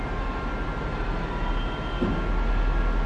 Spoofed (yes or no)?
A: no